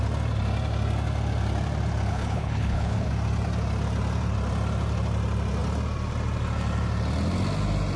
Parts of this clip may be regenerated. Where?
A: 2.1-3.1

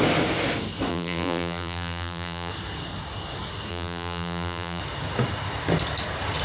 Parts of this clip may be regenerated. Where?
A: 0.9-2.5; 3.7-4.8

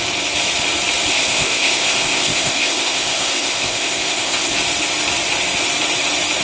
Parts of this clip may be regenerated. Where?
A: 1.1-4.5

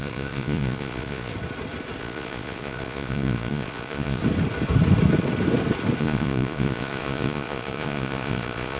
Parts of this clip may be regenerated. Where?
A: 0.0-1.3; 2.0-4.2; 6.0-8.8